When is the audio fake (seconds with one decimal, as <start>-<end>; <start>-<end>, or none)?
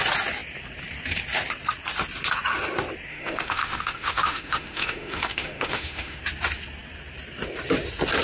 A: 3.1-6.2